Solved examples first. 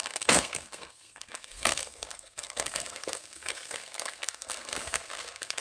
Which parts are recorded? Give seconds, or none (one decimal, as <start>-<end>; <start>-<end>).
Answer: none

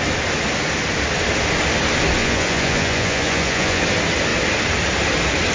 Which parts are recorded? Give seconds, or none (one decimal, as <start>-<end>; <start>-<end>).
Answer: 0.0-2.2; 3.8-5.5

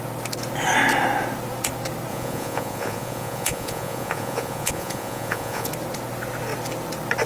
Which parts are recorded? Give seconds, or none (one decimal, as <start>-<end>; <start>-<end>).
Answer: 0.0-2.1; 5.7-7.3

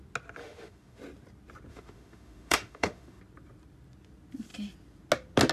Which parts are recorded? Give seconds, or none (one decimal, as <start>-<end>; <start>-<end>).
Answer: 0.0-0.4; 1.0-1.7; 3.2-5.5

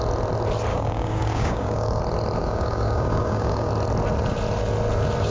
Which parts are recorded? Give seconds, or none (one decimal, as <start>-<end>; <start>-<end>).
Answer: 0.0-0.7; 2.0-2.4; 3.7-5.3

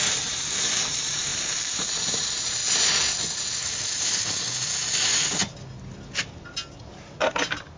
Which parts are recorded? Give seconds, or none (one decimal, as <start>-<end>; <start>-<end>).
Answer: 2.6-6.8

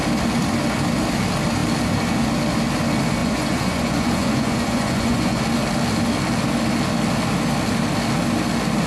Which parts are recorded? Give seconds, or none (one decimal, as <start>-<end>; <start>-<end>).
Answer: 0.0-3.2; 5.4-8.9